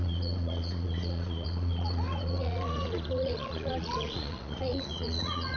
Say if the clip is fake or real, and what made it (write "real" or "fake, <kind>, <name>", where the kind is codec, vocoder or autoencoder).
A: fake, vocoder, Vocos